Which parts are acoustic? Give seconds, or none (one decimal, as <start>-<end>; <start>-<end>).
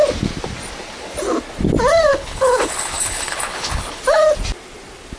0.0-2.1; 4.0-5.2